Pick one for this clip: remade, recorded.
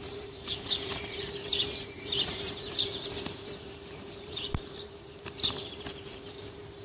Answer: remade